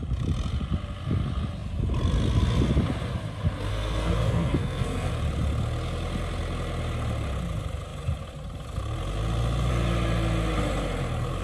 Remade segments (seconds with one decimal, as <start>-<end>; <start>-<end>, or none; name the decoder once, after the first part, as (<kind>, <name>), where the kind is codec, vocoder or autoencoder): 3.7-5.1 (codec, SNAC)